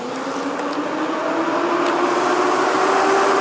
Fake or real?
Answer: real